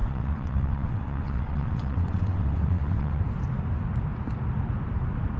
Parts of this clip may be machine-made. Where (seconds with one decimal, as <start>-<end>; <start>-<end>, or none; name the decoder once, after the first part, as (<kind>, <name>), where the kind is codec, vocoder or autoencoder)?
0.0-3.2 (vocoder, WaveNeXt)